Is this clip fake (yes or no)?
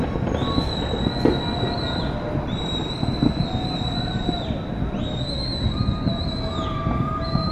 no